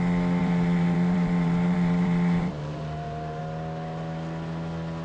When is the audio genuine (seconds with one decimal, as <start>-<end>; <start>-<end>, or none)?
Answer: 0.0-0.4; 3.4-5.0